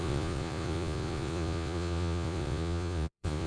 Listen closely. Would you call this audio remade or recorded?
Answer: remade